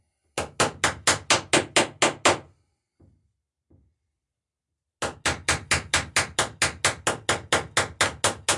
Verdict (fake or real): real